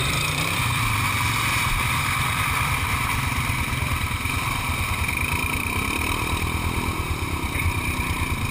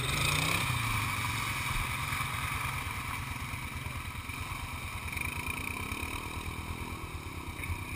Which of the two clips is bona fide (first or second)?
second